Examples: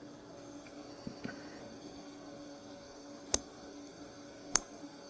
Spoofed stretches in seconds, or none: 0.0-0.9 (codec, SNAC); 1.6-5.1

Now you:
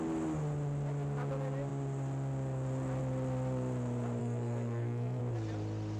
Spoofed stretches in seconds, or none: 4.2-5.2 (codec, SNAC)

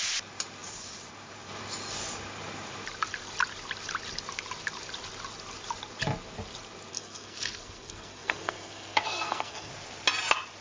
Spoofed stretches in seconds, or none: 6.9-9.7 (codec, SNAC)

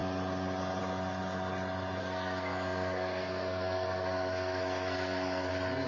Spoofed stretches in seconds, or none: 2.0-5.5 (codec, SNAC)

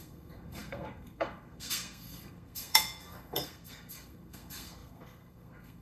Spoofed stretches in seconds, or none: 0.0-5.8 (codec, SNAC)

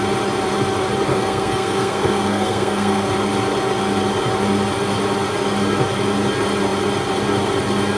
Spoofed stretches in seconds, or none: 1.1-3.1 (codec, SNAC)